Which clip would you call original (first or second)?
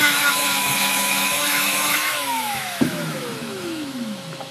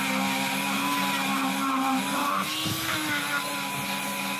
second